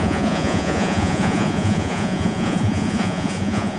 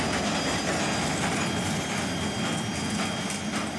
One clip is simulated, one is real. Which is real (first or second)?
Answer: second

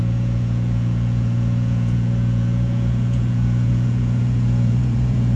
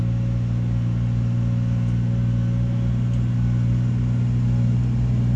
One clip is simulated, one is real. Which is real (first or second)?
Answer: second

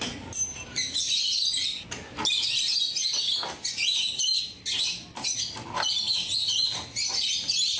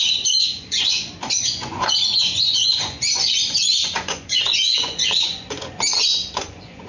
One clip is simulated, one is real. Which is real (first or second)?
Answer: first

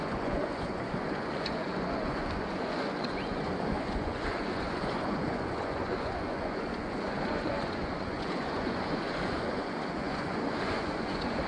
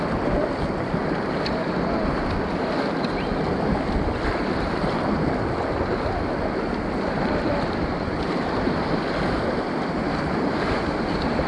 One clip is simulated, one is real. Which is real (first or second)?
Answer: second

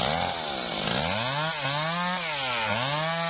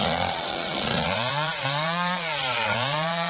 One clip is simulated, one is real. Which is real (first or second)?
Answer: first